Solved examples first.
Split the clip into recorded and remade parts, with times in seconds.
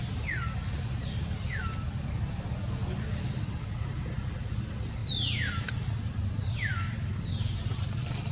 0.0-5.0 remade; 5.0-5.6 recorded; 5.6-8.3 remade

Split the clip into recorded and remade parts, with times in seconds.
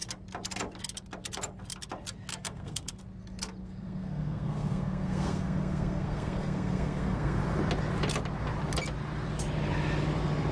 0.0-2.3 recorded; 2.3-3.0 remade; 3.0-3.6 recorded; 3.6-7.4 remade; 7.4-10.5 recorded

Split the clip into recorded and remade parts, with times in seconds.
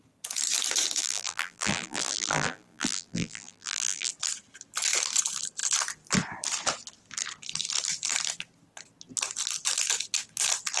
0.0-1.0 recorded; 1.0-4.1 remade; 4.1-10.8 recorded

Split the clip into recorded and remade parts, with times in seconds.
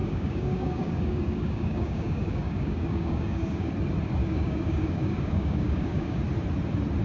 0.0-3.7 remade; 3.7-4.2 recorded; 4.2-6.2 remade; 6.2-7.0 recorded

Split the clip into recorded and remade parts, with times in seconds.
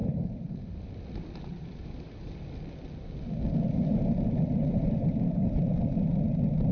0.0-0.8 remade; 0.8-1.5 recorded; 1.5-2.2 remade; 2.2-4.7 recorded; 4.7-6.7 remade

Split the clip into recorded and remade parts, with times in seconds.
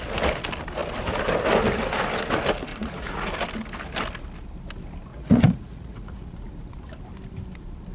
0.0-2.7 recorded; 2.7-3.3 remade; 3.3-5.1 recorded; 5.1-6.5 remade; 6.5-7.9 recorded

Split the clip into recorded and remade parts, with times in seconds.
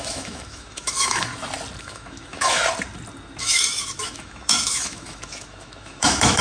0.0-1.3 remade; 1.3-1.8 recorded; 1.8-2.6 remade; 2.6-3.4 recorded; 3.4-6.4 remade